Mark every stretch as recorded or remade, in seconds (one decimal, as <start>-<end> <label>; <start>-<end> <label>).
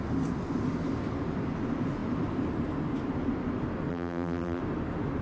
0.0-3.9 recorded; 3.9-4.6 remade; 4.6-5.2 recorded